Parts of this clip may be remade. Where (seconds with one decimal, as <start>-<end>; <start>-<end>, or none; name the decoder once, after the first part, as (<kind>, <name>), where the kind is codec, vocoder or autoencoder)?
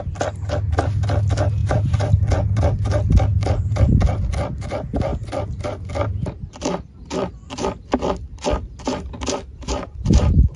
none